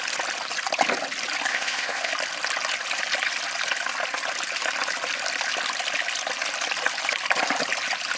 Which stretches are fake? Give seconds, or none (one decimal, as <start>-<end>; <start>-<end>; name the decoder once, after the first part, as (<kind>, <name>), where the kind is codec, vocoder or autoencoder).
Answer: 1.5-2.1 (codec, ZipCodec)